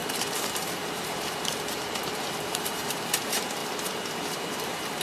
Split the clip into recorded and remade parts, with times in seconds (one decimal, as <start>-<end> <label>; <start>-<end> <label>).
0.0-5.0 remade